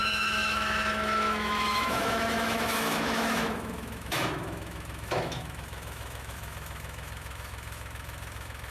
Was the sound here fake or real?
fake